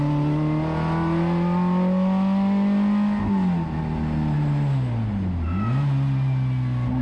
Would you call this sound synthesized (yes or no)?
no